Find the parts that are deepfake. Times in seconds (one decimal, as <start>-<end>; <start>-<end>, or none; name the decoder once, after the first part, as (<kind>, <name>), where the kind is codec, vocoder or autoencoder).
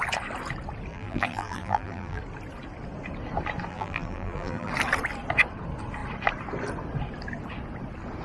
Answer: 0.9-2.2 (vocoder, BigVGAN v2); 3.7-4.7